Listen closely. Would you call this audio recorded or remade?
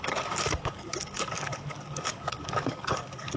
remade